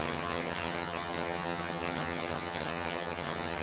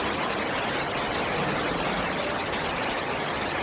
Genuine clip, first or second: second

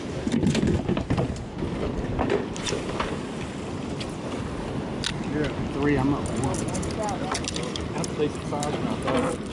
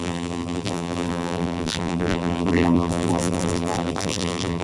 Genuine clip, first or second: first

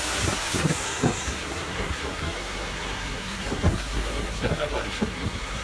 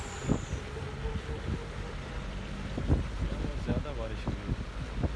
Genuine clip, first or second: second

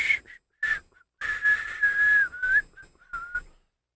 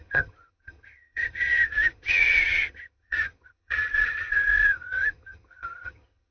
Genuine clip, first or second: first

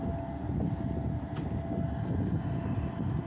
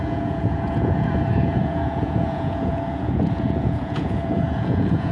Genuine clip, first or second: first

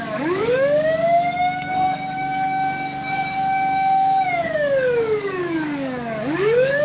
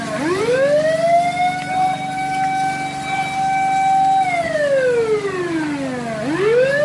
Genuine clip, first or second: second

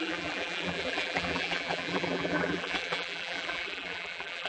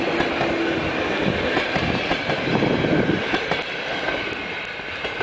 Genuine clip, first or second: second